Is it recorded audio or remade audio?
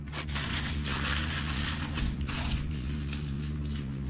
remade